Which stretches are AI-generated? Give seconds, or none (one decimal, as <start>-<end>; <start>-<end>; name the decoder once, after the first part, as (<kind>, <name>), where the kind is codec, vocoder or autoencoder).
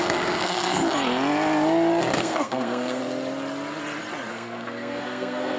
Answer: 0.0-0.8 (codec, SNAC); 2.2-3.0; 4.3-5.6